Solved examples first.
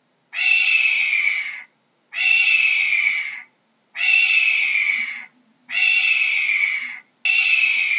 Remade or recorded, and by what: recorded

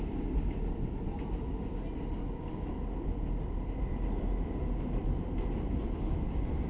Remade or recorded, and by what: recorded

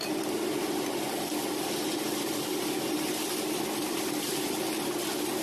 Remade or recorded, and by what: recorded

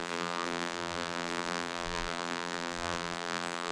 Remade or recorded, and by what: remade, vocoder, BigVGAN v2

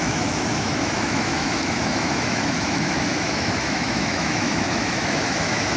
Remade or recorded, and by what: remade, autoencoder, DAC-VAE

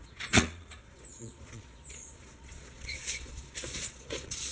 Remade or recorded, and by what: remade, vocoder, Vocos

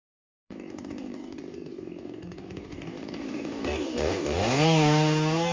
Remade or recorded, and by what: remade, codec, DAC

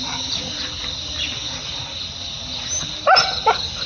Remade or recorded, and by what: recorded